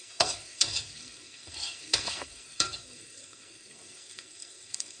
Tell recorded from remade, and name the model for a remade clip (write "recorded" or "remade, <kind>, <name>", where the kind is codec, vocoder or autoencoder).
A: remade, codec, SNAC